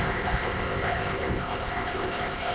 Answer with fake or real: fake